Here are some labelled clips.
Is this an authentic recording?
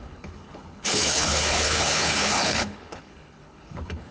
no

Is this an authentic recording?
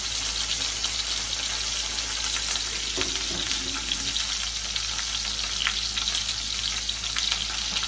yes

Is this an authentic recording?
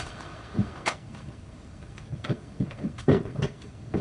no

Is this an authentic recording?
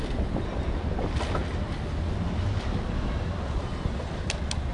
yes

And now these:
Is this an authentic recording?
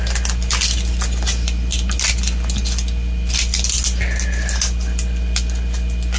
yes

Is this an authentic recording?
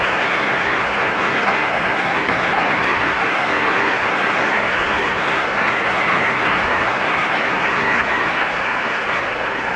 no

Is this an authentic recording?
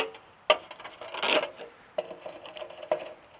yes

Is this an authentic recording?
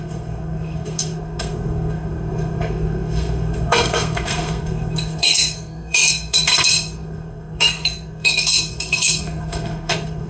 no